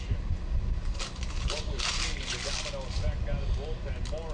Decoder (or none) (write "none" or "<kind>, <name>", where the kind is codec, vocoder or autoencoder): none